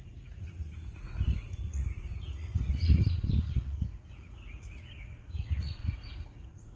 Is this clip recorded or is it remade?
remade